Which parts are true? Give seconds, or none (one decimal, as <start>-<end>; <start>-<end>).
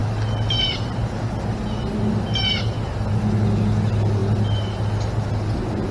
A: 0.0-5.9